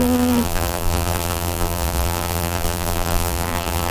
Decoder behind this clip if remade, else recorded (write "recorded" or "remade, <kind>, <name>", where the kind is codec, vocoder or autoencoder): remade, vocoder, BigVGAN v2